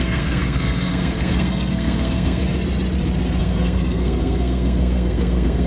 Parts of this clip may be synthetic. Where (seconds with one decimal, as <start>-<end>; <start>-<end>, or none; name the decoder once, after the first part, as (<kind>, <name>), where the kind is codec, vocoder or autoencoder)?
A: 0.0-2.4 (codec, SNAC); 3.4-5.7